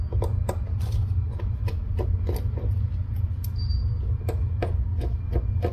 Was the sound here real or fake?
real